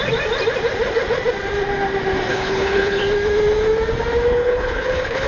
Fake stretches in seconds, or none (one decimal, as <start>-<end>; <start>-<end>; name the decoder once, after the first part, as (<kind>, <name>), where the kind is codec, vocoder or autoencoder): 2.3-3.0 (codec, HILCodec); 4.3-5.3